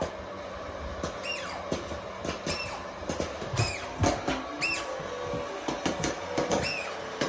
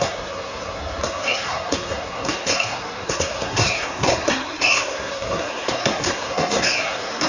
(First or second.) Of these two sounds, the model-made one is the second